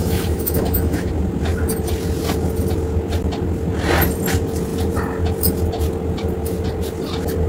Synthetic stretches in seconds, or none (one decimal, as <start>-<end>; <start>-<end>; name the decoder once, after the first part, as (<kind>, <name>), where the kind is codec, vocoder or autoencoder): 0.0-1.1 (autoencoder, DAC-VAE)